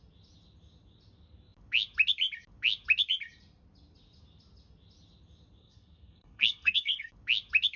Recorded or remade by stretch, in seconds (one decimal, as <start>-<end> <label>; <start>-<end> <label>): 0.0-5.6 recorded; 5.6-7.1 remade; 7.1-7.8 recorded